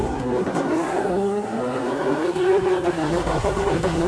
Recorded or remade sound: remade